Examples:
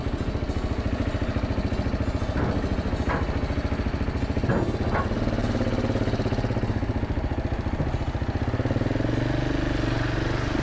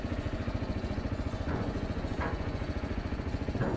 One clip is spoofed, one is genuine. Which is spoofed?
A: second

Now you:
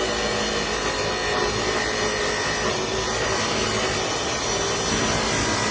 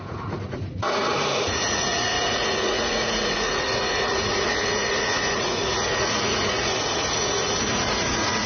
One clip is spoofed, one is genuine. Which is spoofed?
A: second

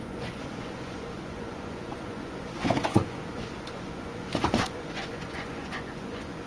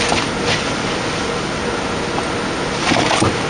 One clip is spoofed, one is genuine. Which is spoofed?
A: first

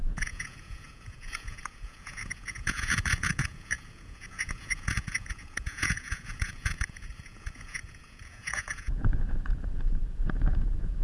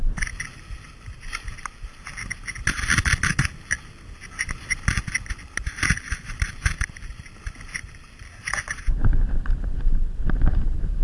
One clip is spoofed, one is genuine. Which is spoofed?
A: first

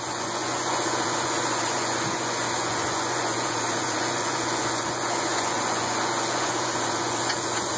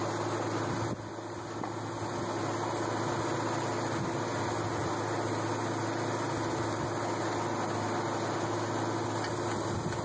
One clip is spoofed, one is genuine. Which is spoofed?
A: first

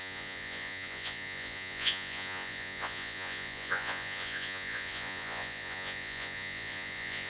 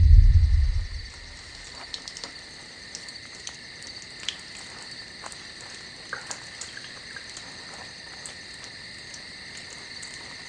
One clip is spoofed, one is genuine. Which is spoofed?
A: first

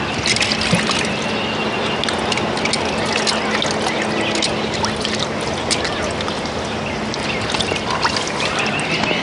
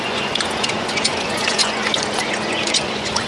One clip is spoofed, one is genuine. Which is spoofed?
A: second